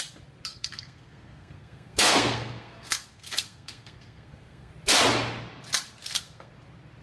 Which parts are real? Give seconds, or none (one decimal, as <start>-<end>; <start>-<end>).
0.0-0.5; 4.7-6.0; 6.5-7.0